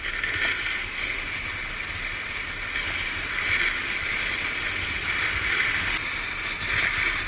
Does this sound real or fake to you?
real